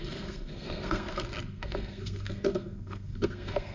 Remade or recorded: remade